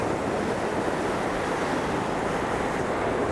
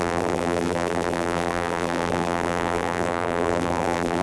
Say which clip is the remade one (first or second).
second